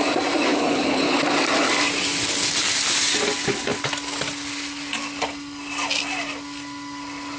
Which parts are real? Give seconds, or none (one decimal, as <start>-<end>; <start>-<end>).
0.0-0.5; 1.2-7.4